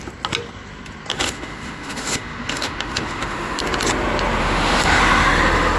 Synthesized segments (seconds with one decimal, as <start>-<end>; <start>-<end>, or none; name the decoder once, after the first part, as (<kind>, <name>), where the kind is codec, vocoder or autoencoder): 1.1-3.6 (autoencoder, DAC-VAE); 4.4-5.0

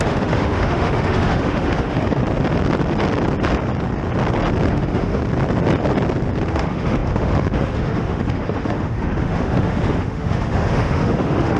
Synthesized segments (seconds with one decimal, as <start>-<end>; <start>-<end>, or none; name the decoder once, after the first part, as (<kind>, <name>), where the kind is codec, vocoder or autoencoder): 0.0-2.2 (autoencoder, DAC-VAE); 4.7-5.2; 6.5-11.6

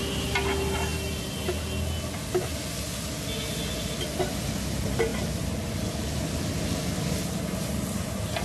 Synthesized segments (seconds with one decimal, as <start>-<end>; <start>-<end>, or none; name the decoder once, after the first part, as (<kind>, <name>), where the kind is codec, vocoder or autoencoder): none

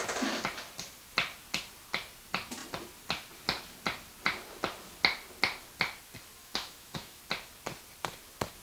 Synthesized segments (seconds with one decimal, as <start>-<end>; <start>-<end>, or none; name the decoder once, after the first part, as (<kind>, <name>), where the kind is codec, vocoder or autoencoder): 6.4-7.2 (autoencoder, DAC-VAE)

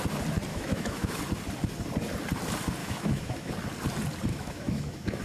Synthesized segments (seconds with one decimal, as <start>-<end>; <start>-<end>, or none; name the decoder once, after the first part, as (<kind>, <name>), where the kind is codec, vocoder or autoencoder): 0.5-1.2 (autoencoder, DAC-VAE); 2.8-3.5; 4.3-5.2

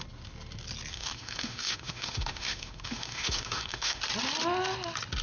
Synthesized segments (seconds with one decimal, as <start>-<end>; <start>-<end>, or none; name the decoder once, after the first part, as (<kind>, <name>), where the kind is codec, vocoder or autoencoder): 0.9-4.0 (autoencoder, DAC-VAE)

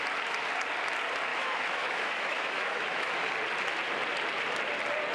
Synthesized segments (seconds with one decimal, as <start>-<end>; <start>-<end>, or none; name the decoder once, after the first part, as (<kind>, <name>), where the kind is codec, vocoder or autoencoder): 1.3-3.1 (autoencoder, DAC-VAE)

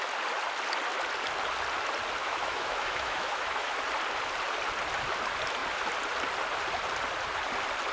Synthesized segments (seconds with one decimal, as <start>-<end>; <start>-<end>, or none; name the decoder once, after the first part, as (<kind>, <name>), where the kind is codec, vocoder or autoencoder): 2.2-3.8 (autoencoder, DAC-VAE)